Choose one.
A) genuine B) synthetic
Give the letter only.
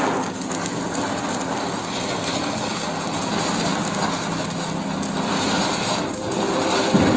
A